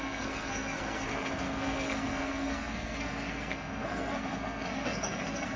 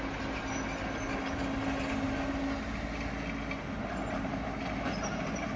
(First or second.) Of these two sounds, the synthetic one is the first